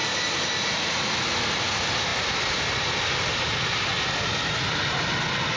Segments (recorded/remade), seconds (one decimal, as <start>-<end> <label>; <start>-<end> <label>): 0.0-5.6 recorded